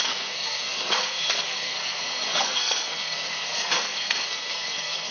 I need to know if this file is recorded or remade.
remade